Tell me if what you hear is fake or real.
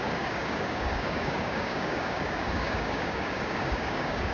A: fake